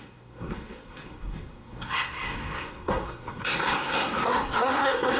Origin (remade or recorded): remade